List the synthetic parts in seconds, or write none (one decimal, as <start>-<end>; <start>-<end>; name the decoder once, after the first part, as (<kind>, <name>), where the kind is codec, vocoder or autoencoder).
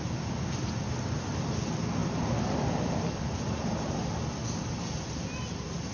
none